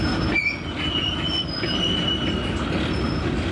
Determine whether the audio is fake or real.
real